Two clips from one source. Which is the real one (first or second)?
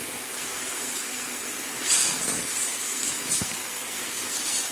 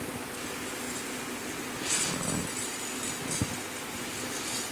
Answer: second